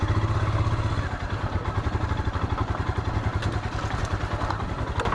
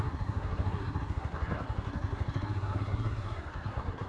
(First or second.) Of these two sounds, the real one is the first